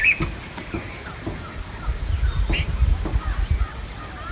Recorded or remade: recorded